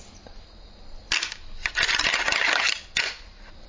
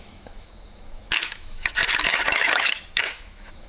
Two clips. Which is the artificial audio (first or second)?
second